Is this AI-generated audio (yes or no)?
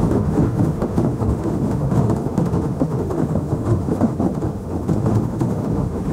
yes